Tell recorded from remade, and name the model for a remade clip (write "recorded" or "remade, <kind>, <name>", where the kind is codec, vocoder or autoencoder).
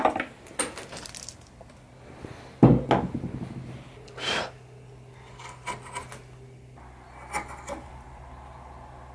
recorded